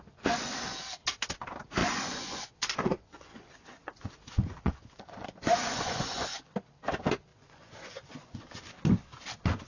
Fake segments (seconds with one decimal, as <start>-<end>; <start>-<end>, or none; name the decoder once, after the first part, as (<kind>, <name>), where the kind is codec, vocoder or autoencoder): 1.8-6.5 (vocoder, Vocos); 7.3-8.7